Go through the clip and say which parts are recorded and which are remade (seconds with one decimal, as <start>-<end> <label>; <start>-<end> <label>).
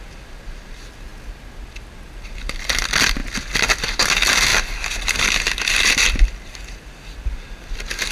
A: 0.0-8.1 recorded